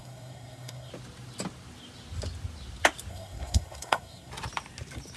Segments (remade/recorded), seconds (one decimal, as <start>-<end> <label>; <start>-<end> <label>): 0.0-0.9 remade; 0.9-3.1 recorded; 3.1-4.3 remade; 4.3-5.2 recorded